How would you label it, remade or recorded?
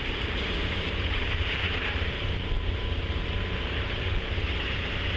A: remade